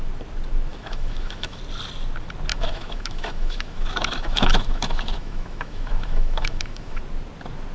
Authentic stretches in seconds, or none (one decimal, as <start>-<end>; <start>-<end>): 0.0-0.7; 1.6-2.5; 7.0-7.7